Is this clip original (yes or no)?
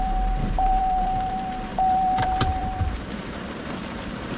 no